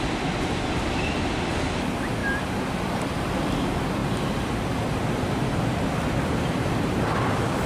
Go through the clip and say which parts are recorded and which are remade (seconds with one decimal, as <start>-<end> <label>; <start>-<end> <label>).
0.0-2.2 remade; 2.2-3.0 recorded; 3.0-4.0 remade; 4.0-5.3 recorded; 5.3-7.7 remade